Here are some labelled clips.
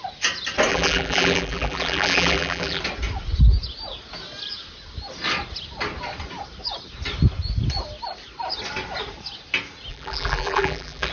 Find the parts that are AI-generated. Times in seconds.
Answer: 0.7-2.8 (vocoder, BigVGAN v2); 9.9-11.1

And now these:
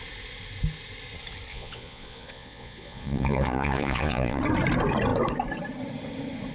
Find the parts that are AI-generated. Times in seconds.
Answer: 1.5-4.4 (vocoder, Vocos)

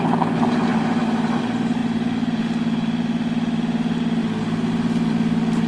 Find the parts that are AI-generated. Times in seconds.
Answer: none